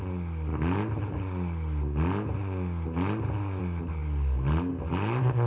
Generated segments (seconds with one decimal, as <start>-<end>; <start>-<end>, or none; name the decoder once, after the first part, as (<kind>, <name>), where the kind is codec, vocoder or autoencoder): none